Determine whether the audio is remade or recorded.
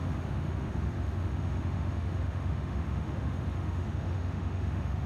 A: remade